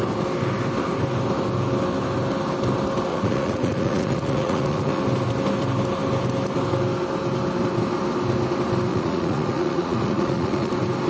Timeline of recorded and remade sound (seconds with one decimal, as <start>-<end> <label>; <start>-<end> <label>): 0.0-3.1 recorded; 3.1-5.0 remade; 5.0-8.9 recorded; 8.9-10.7 remade; 10.7-11.1 recorded